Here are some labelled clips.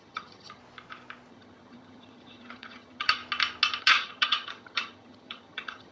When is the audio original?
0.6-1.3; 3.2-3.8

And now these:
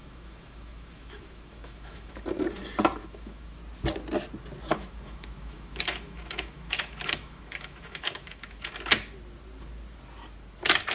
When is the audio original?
2.2-3.0; 3.6-4.7; 8.7-10.9

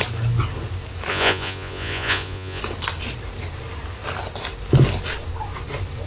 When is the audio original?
0.0-1.1; 2.6-6.1